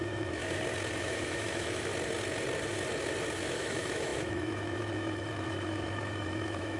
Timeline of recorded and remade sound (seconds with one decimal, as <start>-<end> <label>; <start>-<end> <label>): 0.0-0.4 remade; 0.4-1.0 recorded; 1.0-1.9 remade; 1.9-3.4 recorded; 3.4-6.8 remade